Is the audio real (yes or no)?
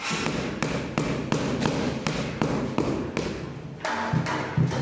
yes